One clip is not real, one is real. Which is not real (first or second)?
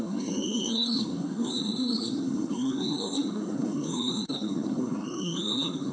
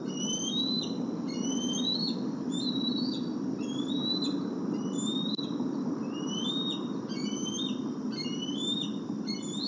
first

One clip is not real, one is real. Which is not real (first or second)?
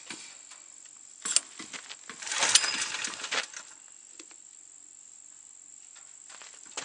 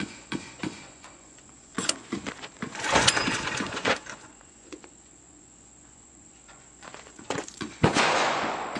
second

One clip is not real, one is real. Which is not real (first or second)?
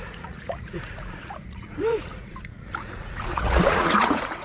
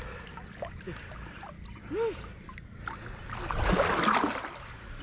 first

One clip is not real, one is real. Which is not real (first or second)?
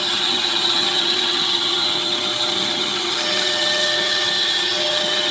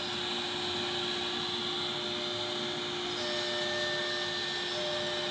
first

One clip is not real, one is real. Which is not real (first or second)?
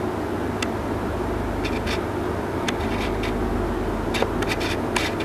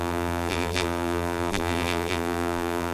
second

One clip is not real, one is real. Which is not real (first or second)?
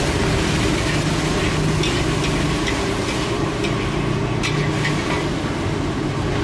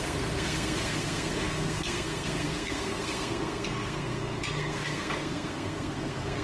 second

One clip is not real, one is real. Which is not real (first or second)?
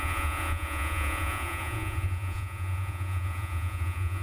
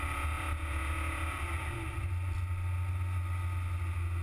first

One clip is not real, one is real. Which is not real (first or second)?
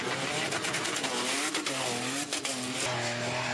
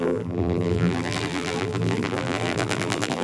second